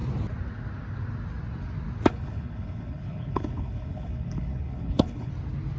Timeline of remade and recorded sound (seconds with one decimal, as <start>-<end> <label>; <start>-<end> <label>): 0.0-2.1 recorded; 2.1-5.3 remade; 5.3-5.8 recorded